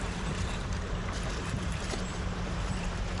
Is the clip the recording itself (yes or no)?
no